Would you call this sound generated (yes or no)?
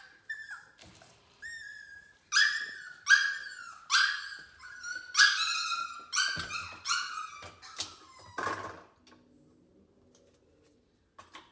no